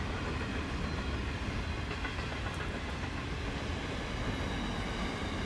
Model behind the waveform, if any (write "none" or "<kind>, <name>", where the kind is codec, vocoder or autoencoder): none